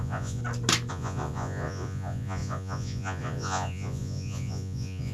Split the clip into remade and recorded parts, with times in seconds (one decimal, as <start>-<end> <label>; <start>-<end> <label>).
0.0-0.4 remade; 0.4-0.9 recorded; 0.9-5.1 remade